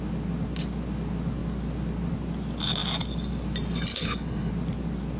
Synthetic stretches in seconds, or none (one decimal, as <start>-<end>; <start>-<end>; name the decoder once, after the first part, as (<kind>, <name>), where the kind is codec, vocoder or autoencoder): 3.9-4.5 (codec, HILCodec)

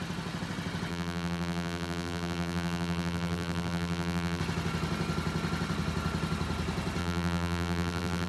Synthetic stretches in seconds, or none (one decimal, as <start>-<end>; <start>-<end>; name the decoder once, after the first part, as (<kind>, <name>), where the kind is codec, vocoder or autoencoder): 0.9-4.4 (vocoder, BigVGAN v2); 7.0-8.3

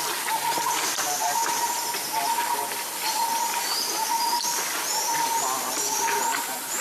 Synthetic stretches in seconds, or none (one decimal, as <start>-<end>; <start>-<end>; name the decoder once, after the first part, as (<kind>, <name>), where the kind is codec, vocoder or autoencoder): 0.0-1.4 (vocoder, BigVGAN v2); 2.5-6.8

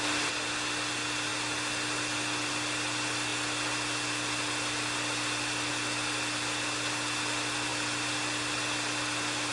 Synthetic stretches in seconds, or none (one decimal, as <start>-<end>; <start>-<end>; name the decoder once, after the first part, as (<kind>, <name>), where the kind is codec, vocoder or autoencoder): none

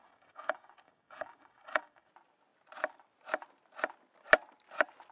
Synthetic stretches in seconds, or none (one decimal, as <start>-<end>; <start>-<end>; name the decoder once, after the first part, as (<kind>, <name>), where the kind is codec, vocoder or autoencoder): 0.0-2.1 (codec, DAC)